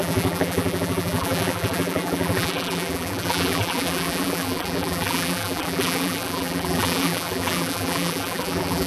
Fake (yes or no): yes